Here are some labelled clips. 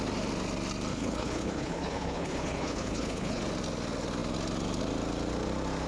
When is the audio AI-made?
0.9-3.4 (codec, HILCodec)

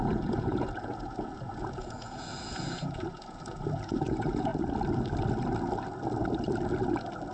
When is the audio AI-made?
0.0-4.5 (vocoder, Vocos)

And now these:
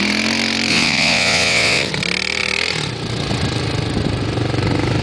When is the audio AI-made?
0.7-1.9 (vocoder, WaveNeXt)

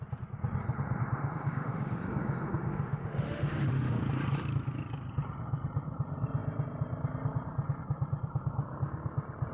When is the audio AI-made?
0.6-4.0 (autoencoder, DAC-VAE)

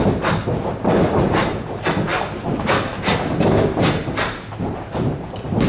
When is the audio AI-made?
none